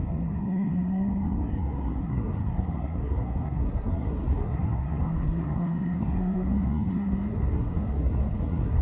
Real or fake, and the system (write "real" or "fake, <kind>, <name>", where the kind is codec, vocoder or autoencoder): fake, codec, SNAC